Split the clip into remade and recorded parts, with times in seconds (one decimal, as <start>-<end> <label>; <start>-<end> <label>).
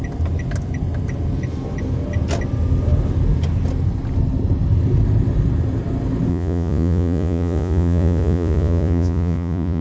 0.0-6.3 recorded; 6.3-9.8 remade